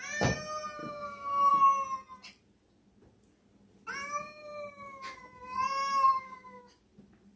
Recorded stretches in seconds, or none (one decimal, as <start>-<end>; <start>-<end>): 0.0-0.8; 1.5-6.1; 6.6-7.4